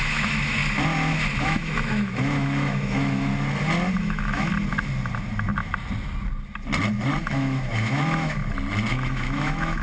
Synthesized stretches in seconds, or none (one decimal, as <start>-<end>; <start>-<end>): 0.0-0.6; 1.4-3.3; 4.0-4.5; 7.2-8.4; 8.9-9.8